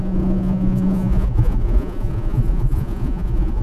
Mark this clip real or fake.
fake